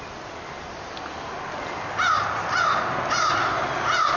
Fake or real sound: real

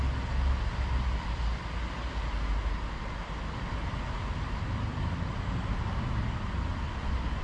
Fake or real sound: real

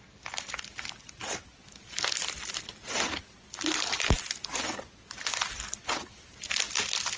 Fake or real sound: real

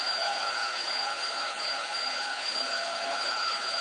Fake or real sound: fake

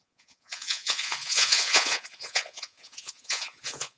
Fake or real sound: fake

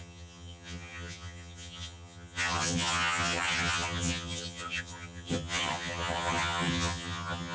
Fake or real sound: fake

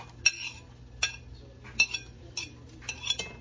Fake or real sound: real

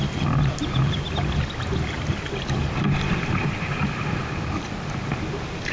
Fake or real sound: real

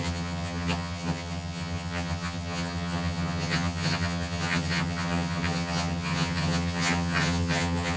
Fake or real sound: fake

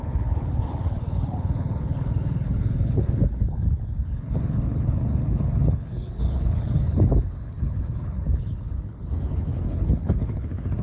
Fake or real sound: fake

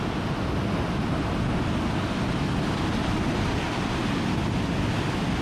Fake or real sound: real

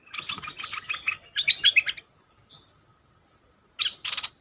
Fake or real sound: real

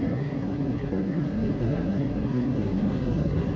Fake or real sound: fake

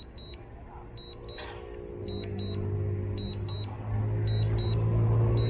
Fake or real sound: real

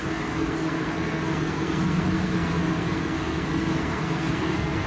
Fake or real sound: fake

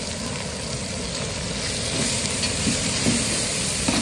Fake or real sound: real